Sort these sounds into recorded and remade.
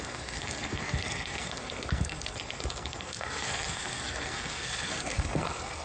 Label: remade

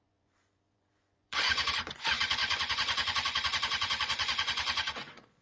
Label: remade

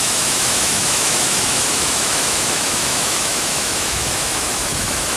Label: remade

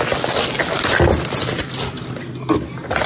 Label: remade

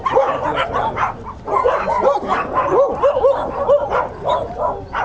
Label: remade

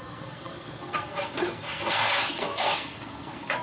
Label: remade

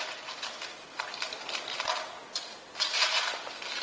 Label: recorded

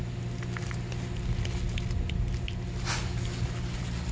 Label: recorded